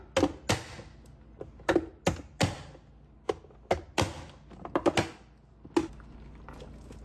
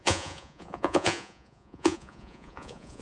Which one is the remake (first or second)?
second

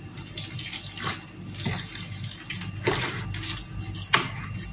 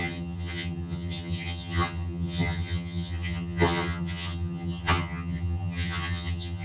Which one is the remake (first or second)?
second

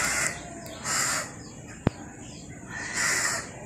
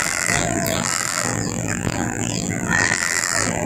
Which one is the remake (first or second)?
second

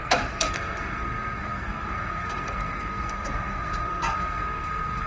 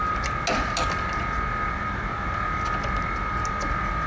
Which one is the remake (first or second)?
first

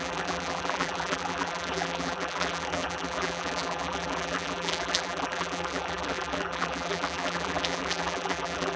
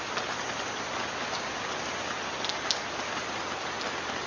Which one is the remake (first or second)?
first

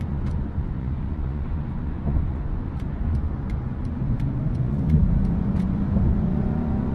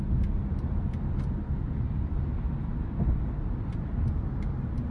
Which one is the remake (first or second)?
first